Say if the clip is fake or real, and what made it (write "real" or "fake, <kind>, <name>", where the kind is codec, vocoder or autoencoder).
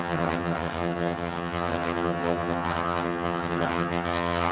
fake, vocoder, HiFi-GAN